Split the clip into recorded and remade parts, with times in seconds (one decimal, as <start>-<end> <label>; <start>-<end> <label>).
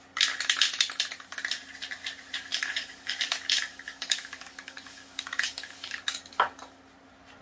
0.0-2.5 recorded; 2.5-6.8 remade; 6.8-7.4 recorded